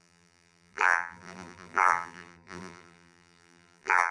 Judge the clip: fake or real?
fake